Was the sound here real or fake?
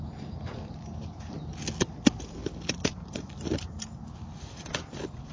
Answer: real